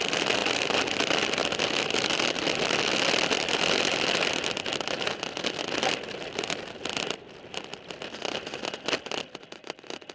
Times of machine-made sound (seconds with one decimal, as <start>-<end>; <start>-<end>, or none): none